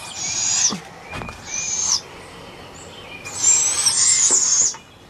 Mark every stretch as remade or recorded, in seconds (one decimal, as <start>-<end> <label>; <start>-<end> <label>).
0.0-5.1 recorded